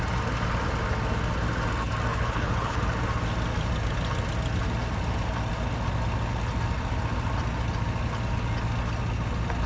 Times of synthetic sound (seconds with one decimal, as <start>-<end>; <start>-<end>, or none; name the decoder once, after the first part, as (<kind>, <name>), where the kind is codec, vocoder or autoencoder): 2.1-2.8 (codec, HILCodec)

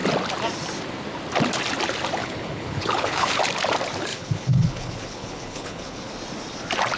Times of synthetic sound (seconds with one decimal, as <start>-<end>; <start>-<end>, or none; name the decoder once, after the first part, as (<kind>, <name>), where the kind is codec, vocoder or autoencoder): 2.2-3.4 (codec, HILCodec); 4.1-6.1

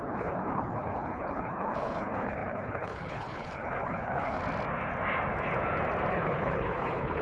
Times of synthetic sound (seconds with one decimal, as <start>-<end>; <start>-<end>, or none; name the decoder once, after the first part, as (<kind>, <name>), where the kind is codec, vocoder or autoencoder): 0.0-4.4 (codec, HILCodec); 6.1-7.2

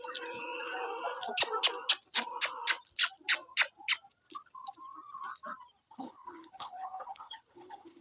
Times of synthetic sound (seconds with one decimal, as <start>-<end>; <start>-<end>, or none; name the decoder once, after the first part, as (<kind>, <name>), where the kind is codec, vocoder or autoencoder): 5.8-8.0 (codec, HILCodec)

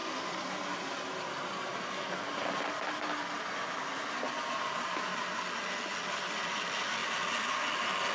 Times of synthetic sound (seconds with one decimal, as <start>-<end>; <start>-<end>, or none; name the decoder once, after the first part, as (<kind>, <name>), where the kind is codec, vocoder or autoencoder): none

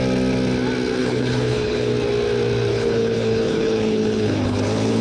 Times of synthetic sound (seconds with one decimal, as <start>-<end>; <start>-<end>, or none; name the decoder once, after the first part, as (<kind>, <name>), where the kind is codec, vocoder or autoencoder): 1.0-1.9 (codec, HILCodec); 2.7-5.0